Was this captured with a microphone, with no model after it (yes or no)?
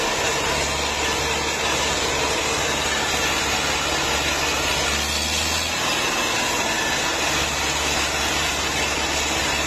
yes